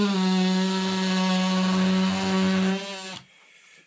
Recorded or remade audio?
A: recorded